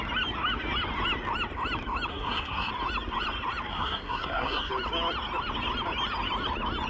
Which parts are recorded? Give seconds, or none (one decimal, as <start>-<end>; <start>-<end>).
0.0-2.1; 2.7-3.7; 4.7-6.9